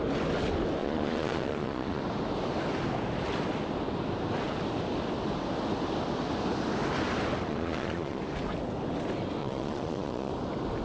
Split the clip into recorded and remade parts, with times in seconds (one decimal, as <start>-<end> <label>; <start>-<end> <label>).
0.0-0.8 recorded; 0.8-2.0 remade; 2.0-7.5 recorded; 7.5-8.2 remade; 8.2-9.4 recorded; 9.4-10.3 remade; 10.3-10.8 recorded